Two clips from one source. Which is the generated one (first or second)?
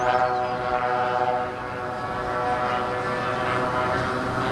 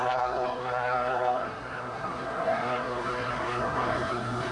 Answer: second